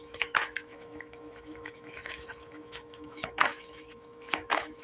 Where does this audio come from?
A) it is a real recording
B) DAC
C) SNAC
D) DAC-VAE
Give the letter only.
D